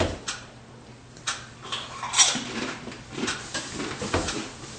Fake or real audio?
real